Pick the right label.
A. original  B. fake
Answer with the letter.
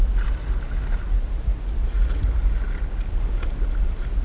A